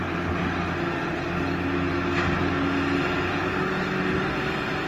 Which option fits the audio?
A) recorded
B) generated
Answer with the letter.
A